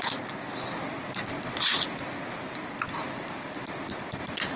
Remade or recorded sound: recorded